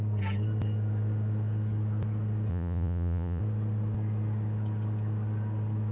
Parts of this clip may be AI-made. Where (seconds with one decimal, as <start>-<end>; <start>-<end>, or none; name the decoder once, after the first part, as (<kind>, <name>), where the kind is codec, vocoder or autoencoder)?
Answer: 2.5-3.4 (vocoder, Vocos)

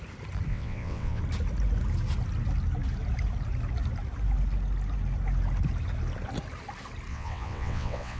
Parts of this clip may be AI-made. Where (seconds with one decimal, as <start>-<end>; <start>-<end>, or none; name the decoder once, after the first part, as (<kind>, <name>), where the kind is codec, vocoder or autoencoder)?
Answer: 0.5-1.2 (vocoder, WaveNeXt); 7.1-8.2

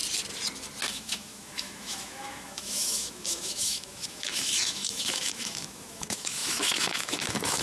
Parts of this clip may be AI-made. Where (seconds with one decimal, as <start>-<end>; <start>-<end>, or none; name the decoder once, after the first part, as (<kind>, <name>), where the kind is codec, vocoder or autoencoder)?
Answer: 0.9-7.6 (autoencoder, DAC-VAE)

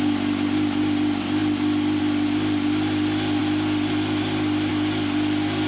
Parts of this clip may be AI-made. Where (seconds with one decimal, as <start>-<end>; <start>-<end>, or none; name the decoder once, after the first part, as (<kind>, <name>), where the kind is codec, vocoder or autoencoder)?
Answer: none

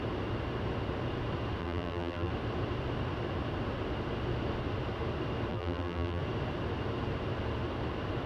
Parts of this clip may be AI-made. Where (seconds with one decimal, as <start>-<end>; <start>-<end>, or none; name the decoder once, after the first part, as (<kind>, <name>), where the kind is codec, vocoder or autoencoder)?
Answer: 1.6-2.3 (vocoder, BigVGAN v2); 5.5-6.2